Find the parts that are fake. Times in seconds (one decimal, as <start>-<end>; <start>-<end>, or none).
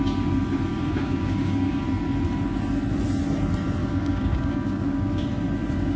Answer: 0.7-1.8; 3.8-5.3